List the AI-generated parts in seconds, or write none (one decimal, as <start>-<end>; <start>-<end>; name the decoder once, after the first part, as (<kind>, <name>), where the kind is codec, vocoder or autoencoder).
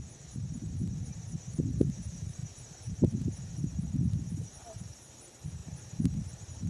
0.0-6.7 (vocoder, BigVGAN v2)